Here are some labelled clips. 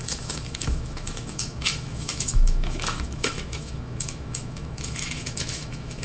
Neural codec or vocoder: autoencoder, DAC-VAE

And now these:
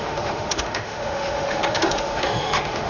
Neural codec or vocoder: autoencoder, DAC-VAE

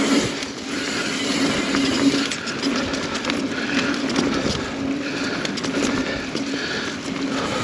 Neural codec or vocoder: none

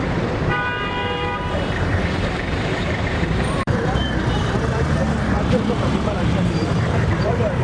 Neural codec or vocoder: vocoder, BigVGAN v2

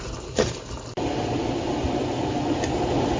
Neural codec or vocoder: none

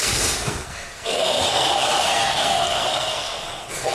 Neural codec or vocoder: codec, SNAC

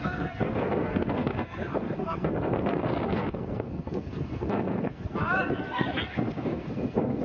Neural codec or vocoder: codec, SNAC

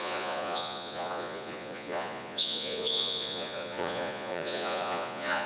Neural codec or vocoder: vocoder, Vocos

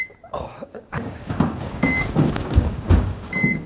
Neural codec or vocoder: codec, DAC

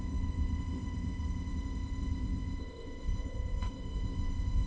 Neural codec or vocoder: codec, ZipCodec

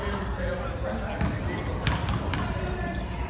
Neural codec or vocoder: none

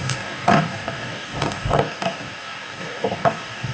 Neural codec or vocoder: codec, DAC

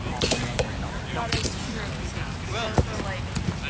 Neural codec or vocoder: none